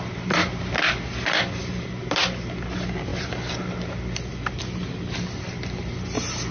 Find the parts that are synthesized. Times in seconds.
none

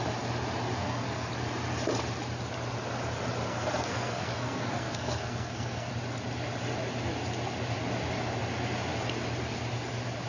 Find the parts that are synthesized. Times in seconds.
0.8-1.3 (codec, SNAC); 3.5-5.9